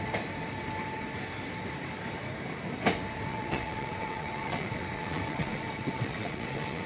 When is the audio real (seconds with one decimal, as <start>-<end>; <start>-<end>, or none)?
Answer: 0.0-3.3